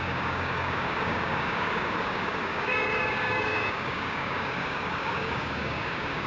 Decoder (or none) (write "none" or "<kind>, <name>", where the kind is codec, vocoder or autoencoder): codec, DAC